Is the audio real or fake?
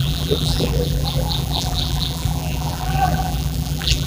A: fake